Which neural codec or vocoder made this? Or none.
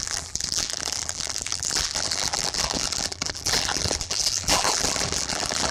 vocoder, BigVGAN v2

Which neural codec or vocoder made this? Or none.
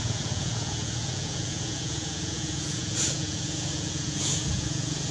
vocoder, Vocos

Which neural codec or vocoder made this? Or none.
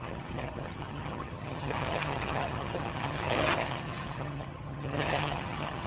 vocoder, HiFi-GAN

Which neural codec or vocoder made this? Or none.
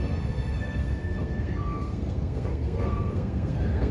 codec, SNAC